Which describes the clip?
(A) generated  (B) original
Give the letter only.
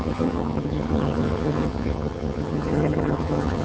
A